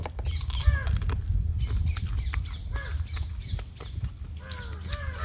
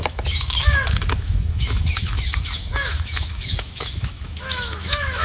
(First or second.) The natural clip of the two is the first